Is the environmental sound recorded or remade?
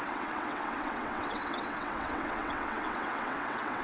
remade